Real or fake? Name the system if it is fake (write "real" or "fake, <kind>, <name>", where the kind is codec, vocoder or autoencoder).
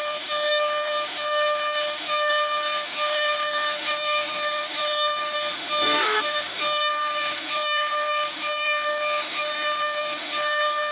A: fake, autoencoder, DAC-VAE